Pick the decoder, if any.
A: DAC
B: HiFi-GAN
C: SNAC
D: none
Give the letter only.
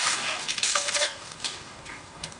A